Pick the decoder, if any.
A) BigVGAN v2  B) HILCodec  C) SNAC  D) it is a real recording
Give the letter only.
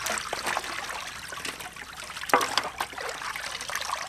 D